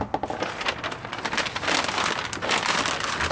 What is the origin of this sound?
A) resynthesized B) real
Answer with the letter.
B